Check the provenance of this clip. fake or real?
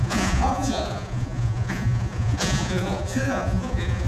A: fake